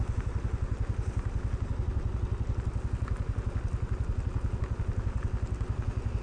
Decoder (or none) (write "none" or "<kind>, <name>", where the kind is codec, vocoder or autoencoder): none